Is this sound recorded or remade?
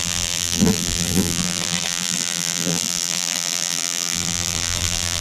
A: remade